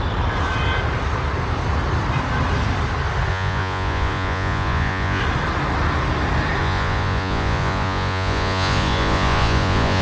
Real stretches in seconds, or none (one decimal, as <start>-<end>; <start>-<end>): 0.0-3.3; 5.2-6.6